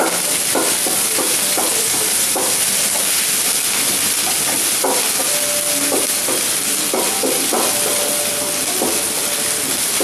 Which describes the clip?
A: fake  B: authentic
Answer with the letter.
B